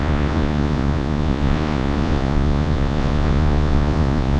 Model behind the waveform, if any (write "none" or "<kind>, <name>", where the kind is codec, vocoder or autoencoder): vocoder, Vocos